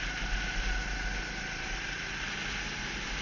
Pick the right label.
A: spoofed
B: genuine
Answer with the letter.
B